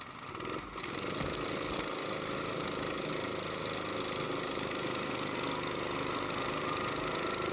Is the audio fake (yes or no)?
no